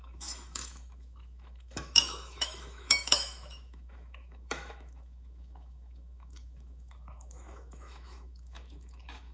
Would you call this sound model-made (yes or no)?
yes